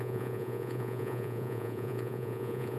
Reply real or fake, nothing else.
fake